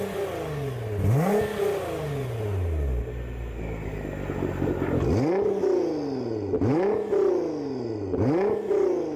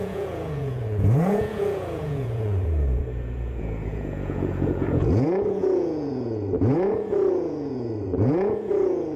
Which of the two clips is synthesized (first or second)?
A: second